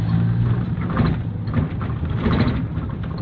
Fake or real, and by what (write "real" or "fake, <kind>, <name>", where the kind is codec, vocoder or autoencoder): real